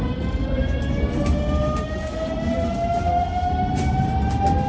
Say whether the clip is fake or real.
real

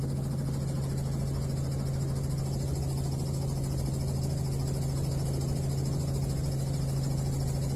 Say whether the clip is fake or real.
real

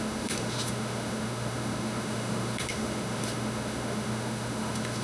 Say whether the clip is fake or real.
fake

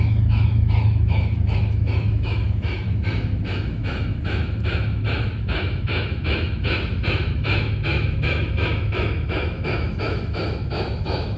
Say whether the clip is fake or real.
fake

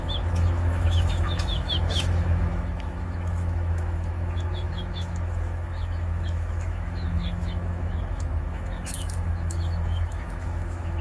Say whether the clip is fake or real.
fake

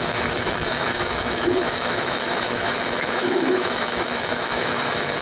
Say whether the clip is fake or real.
fake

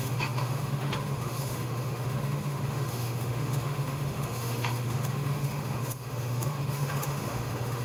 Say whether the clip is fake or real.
fake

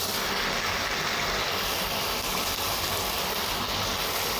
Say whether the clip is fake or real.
real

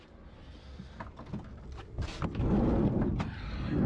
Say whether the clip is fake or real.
real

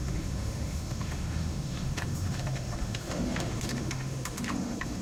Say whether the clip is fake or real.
fake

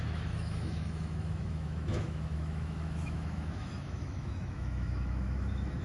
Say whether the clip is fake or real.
fake